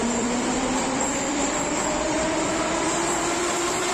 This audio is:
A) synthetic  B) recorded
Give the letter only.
A